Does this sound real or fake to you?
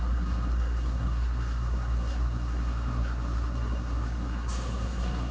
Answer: fake